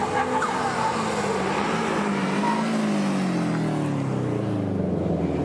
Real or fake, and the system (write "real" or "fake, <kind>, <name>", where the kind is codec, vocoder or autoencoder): real